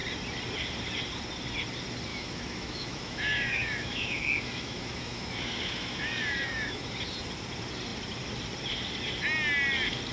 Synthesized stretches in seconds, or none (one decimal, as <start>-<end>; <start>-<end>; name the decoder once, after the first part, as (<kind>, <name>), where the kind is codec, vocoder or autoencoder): 2.1-7.0 (autoencoder, DAC-VAE)